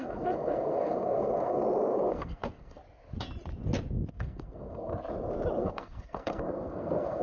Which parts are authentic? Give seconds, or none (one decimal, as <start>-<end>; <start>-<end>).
1.6-2.1; 2.8-4.1; 4.9-5.6